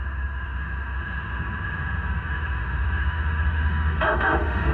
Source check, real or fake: fake